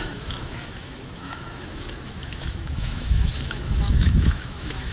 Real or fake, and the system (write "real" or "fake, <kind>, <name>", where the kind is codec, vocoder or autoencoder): fake, autoencoder, DAC-VAE